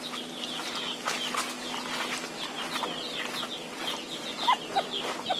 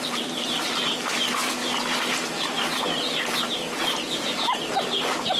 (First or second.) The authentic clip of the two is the first